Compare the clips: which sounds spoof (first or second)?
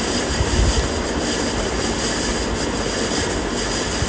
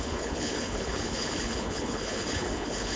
second